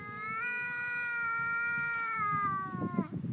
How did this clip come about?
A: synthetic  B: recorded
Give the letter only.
B